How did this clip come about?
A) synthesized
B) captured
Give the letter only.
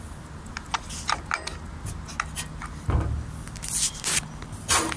B